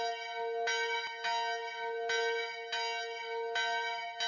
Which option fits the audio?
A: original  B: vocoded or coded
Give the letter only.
A